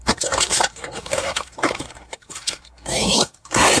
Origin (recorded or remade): remade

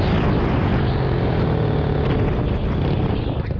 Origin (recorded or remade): recorded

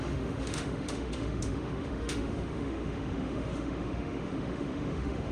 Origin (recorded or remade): remade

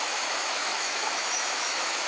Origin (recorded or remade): remade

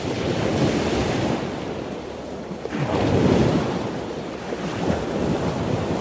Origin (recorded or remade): recorded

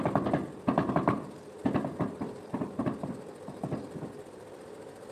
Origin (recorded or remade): recorded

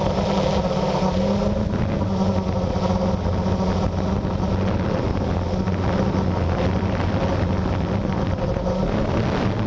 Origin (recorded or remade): recorded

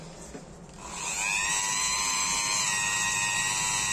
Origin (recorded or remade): recorded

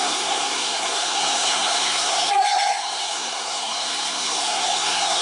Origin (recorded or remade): remade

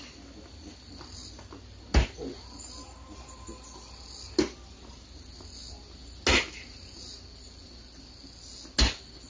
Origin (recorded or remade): recorded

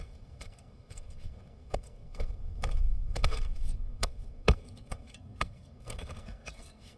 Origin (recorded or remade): remade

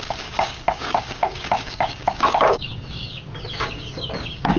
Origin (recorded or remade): remade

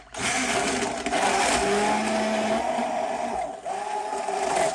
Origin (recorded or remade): recorded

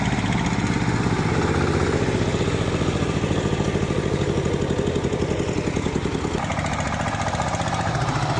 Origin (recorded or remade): recorded